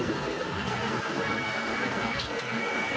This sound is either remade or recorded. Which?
remade